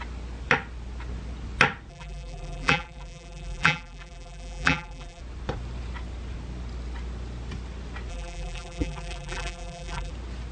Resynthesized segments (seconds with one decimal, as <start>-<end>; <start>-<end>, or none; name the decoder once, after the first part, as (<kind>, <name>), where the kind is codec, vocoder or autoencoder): 1.9-5.2 (vocoder, BigVGAN v2); 8.1-10.1